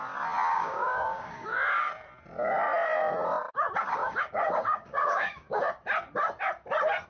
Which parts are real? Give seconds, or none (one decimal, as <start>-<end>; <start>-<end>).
0.0-0.5; 1.9-4.0; 5.7-7.1